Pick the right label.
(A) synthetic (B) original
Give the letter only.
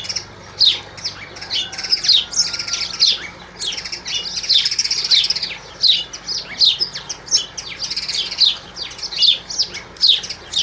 B